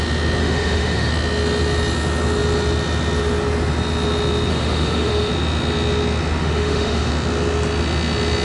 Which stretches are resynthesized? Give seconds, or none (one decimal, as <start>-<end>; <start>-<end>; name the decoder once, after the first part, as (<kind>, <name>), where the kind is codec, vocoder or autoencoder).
0.4-1.1 (autoencoder, DAC-VAE); 4.5-5.3; 6.4-7.1